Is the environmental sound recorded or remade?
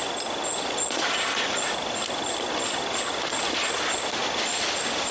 recorded